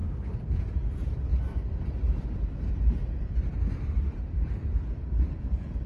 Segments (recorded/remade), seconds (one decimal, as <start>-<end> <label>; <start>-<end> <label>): 0.0-0.7 recorded; 0.7-5.9 remade